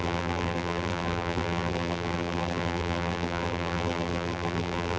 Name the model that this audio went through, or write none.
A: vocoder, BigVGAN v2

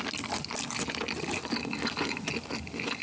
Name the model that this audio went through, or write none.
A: none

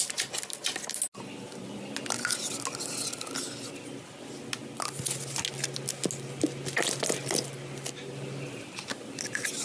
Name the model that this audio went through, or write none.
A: none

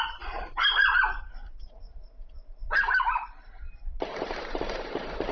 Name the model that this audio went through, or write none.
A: vocoder, BigVGAN v2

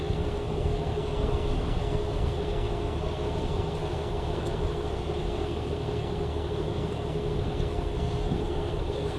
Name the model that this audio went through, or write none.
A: codec, SNAC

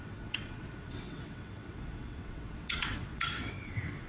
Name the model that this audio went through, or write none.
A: vocoder, WaveNeXt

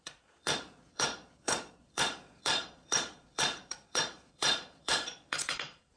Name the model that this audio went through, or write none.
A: vocoder, Vocos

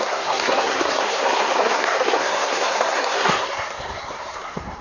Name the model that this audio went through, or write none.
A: codec, SNAC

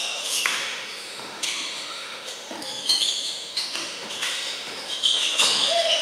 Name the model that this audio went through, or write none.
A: autoencoder, DAC-VAE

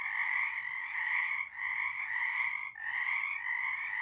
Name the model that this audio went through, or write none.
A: none